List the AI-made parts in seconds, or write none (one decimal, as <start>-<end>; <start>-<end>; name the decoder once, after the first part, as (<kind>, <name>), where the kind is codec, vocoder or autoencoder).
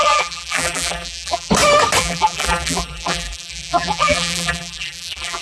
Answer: 0.0-1.5 (vocoder, BigVGAN v2); 2.0-5.4